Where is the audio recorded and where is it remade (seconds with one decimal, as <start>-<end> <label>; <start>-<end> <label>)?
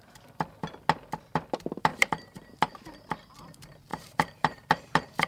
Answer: 0.0-1.9 recorded; 1.9-2.7 remade; 2.7-3.9 recorded; 3.9-5.3 remade